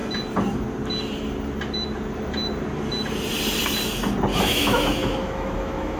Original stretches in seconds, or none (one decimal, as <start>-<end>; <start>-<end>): 0.0-4.3

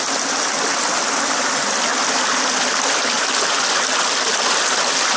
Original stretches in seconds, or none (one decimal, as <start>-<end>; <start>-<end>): 0.0-5.2

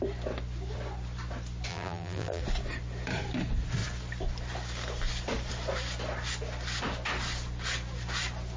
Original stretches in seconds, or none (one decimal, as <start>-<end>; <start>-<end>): 0.0-1.7; 2.4-8.6

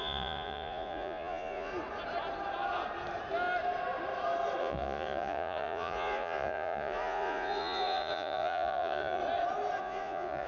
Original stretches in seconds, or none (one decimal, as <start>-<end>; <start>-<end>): 1.7-4.6; 9.2-9.8